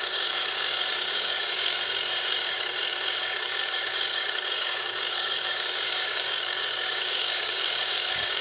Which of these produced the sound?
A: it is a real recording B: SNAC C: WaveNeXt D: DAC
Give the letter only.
D